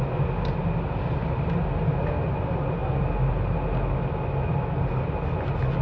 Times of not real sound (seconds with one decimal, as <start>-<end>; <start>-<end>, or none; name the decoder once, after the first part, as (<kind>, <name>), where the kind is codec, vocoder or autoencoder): none